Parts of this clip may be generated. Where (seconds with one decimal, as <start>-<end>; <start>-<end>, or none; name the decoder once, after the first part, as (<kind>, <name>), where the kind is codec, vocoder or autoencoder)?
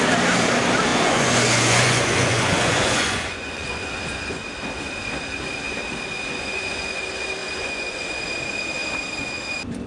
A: 0.9-3.9 (vocoder, Vocos); 6.3-7.0; 7.4-8.2